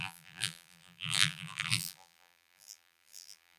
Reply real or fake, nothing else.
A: fake